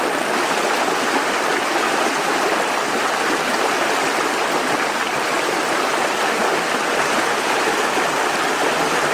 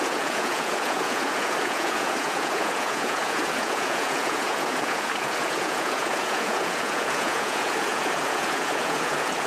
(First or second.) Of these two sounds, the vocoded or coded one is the second